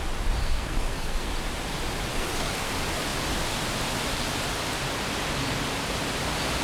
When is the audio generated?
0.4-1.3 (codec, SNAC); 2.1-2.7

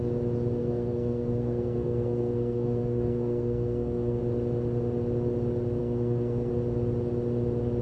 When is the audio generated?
0.6-4.2 (codec, SNAC); 5.8-6.5

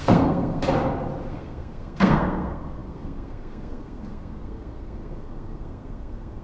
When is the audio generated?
0.0-0.6 (codec, SNAC); 1.3-6.4

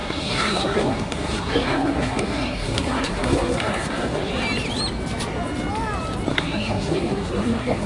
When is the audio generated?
0.0-4.3 (codec, SNAC); 6.3-7.9

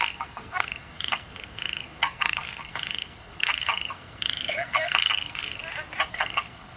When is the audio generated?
0.0-5.6 (codec, SNAC); 6.1-6.8